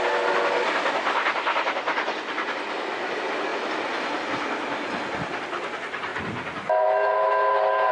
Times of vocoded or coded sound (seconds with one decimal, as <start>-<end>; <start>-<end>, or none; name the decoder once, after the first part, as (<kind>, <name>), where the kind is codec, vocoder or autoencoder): none